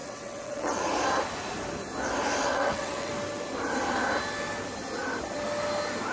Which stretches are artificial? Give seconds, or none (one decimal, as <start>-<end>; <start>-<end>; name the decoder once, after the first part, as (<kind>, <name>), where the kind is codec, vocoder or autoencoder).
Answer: 0.0-0.8 (vocoder, WaveNeXt); 2.4-3.1